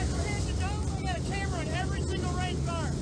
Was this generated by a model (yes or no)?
no